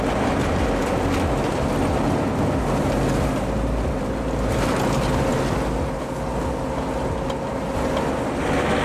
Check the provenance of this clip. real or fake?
real